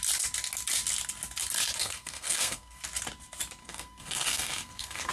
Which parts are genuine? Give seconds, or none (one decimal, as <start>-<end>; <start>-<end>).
0.0-1.8; 2.8-3.6